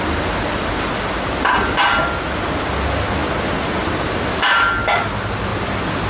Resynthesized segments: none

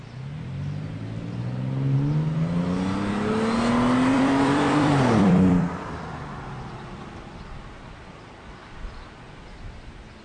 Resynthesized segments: 4.1-7.0 (vocoder, BigVGAN v2)

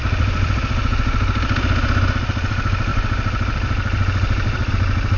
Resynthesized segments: 0.0-0.6 (vocoder, BigVGAN v2); 2.9-4.7

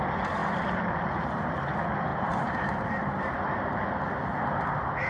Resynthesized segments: 0.4-1.5 (vocoder, BigVGAN v2); 2.1-3.7

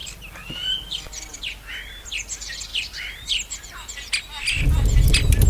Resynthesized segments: 0.0-1.3 (vocoder, BigVGAN v2); 2.7-4.1

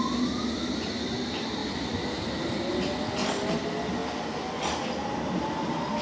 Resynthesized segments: 1.6-2.7 (vocoder, BigVGAN v2)

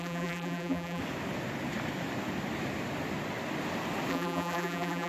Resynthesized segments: 0.0-1.0 (vocoder, BigVGAN v2); 4.1-5.1

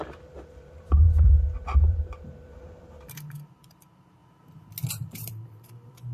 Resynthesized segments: 0.0-4.2 (vocoder, BigVGAN v2); 4.9-6.1